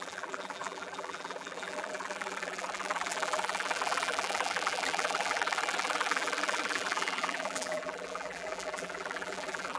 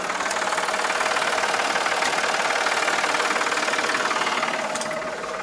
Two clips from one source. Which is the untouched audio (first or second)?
second